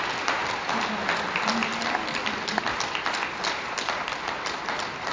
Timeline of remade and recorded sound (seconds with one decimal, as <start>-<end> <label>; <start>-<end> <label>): 0.0-5.1 recorded